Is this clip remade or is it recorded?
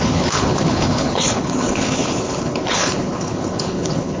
remade